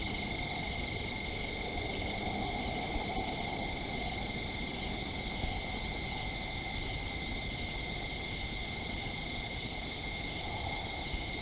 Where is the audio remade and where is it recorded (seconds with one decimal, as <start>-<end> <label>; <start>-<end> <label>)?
0.0-11.4 recorded